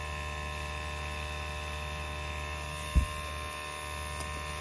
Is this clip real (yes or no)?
yes